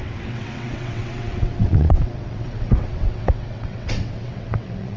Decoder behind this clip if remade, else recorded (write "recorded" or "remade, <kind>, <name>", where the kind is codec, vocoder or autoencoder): remade, vocoder, WaveNeXt